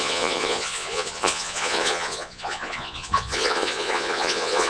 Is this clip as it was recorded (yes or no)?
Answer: no